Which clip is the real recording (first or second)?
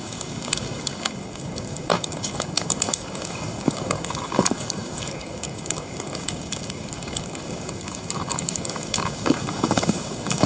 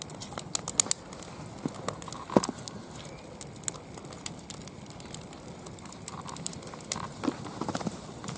second